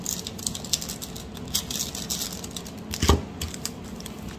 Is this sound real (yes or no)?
yes